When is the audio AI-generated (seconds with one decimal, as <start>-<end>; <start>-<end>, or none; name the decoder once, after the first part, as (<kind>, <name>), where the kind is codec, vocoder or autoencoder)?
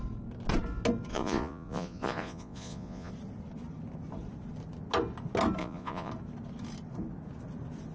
1.1-3.1 (vocoder, Vocos); 5.6-6.1